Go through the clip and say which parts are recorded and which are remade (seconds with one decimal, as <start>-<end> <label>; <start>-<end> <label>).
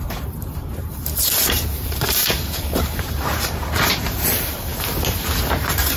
0.0-4.7 remade; 4.7-5.6 recorded; 5.6-6.0 remade